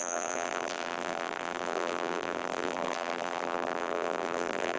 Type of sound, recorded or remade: remade